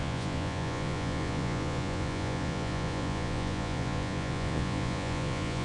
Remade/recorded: remade